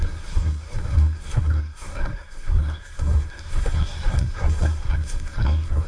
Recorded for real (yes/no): no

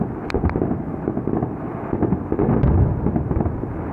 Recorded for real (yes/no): yes